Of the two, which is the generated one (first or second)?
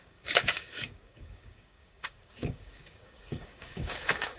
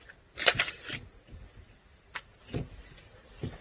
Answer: first